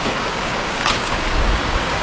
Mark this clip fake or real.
fake